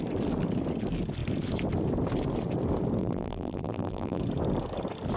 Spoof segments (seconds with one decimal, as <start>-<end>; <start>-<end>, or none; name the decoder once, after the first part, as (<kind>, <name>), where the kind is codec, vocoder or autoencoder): 3.0-4.2 (vocoder, BigVGAN v2)